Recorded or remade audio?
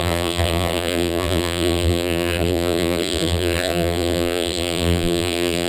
remade